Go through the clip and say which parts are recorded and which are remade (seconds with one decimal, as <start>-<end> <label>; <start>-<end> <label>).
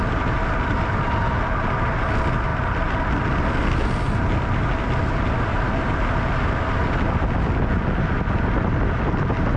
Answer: 0.0-9.6 recorded